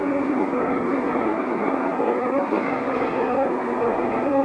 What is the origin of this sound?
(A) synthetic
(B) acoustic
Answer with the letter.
A